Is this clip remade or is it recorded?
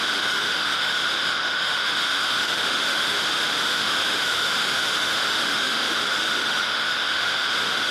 remade